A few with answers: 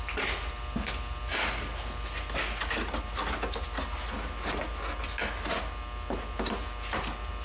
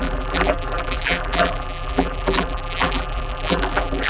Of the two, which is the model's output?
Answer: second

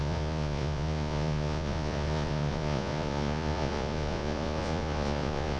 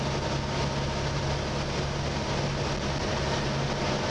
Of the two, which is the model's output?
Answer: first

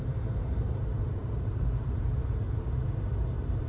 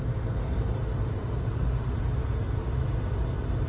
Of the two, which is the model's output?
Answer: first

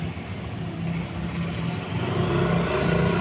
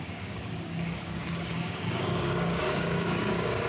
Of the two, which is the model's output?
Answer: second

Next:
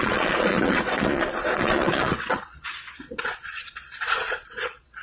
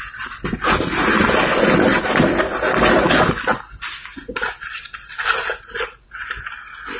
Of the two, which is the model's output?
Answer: first